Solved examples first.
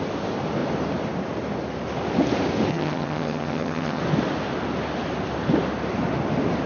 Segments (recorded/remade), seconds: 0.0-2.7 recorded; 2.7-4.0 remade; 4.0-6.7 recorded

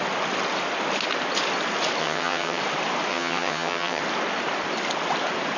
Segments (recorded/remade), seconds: 0.0-2.0 recorded; 2.0-2.6 remade; 2.6-3.1 recorded; 3.1-4.0 remade; 4.0-5.6 recorded

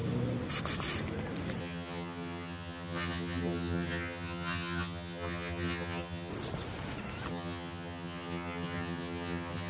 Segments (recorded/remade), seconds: 0.0-1.6 recorded; 1.6-6.3 remade; 6.3-7.3 recorded; 7.3-9.7 remade

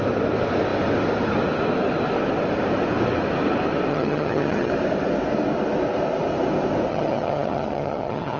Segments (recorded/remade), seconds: 0.0-3.9 recorded; 3.9-4.7 remade; 4.7-6.9 recorded; 6.9-8.4 remade

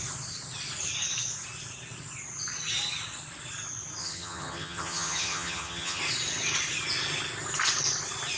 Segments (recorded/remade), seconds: 0.0-4.0 recorded; 4.0-6.0 remade; 6.0-8.4 recorded

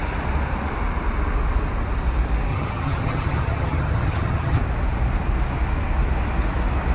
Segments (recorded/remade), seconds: 0.0-2.5 recorded; 2.5-4.6 remade; 4.6-6.9 recorded

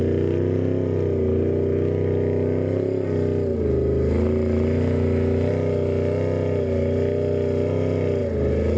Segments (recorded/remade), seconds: 0.0-8.8 recorded